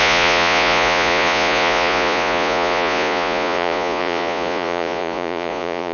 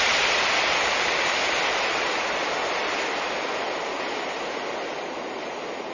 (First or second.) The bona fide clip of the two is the second